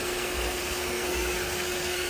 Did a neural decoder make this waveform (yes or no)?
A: yes